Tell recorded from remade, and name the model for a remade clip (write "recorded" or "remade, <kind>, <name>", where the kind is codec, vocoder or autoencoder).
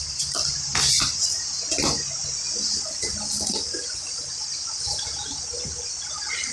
recorded